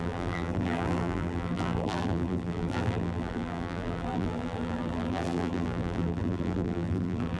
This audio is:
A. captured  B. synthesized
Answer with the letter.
B